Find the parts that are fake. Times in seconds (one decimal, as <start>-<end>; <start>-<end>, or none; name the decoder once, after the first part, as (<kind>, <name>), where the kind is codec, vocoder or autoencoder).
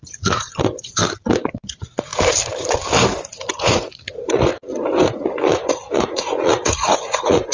0.0-1.0 (vocoder, Vocos); 1.7-2.1; 3.5-4.5; 5.1-7.5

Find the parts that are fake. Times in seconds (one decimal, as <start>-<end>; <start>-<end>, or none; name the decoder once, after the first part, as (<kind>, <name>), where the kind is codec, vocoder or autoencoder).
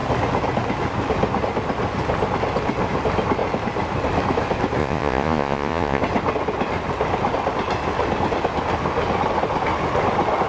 4.8-6.0 (vocoder, Vocos)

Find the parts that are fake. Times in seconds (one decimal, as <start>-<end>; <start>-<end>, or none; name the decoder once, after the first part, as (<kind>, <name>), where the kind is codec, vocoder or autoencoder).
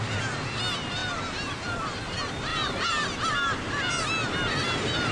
none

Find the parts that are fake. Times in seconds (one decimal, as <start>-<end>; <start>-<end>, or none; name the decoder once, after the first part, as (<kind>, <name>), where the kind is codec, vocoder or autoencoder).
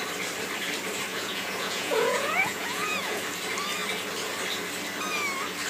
1.1-3.2 (vocoder, Vocos)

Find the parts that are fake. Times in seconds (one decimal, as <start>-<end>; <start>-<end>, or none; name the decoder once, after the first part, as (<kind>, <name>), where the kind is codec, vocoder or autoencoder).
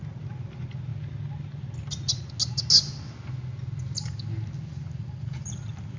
none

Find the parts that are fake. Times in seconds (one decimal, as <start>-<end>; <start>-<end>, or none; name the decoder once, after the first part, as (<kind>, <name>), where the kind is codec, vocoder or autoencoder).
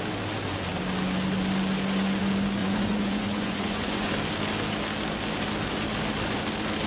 2.6-4.1 (vocoder, Vocos)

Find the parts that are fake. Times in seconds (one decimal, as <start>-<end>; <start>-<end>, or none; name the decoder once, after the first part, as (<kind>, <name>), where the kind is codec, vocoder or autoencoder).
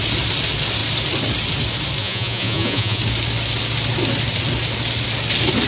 2.0-3.0 (vocoder, Vocos)